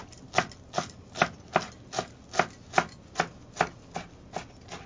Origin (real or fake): real